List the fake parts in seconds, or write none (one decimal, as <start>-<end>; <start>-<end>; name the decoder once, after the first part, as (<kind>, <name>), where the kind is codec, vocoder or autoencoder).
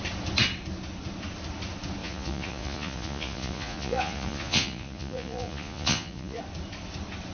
2.0-6.4 (vocoder, Vocos)